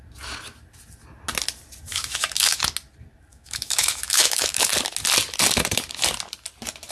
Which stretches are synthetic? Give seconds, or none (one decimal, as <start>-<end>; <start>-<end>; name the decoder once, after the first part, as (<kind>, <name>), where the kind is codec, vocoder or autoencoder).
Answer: 1.9-2.6 (autoencoder, DAC-VAE); 3.3-4.7